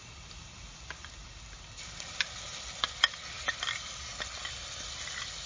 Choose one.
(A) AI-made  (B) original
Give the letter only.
B